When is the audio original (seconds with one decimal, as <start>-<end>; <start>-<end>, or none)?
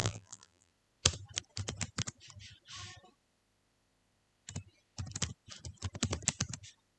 0.7-7.0